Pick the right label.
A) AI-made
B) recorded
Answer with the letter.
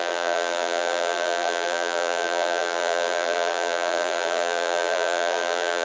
A